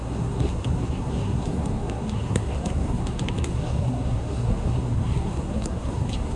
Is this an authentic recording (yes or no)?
no